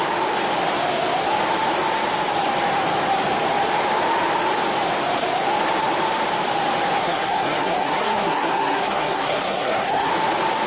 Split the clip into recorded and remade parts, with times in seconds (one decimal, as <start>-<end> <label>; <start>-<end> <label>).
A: 0.0-7.0 recorded; 7.0-10.1 remade; 10.1-10.7 recorded